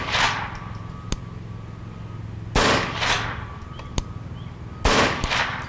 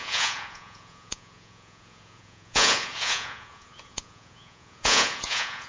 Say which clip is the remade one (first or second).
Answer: second